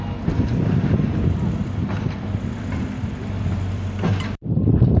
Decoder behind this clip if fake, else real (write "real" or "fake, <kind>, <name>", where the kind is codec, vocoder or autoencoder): fake, vocoder, BigVGAN v2